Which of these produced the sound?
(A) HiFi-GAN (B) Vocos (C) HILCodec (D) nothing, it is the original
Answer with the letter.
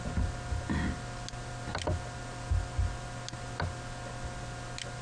D